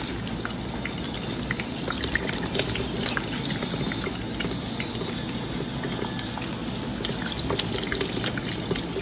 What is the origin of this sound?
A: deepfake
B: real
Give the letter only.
B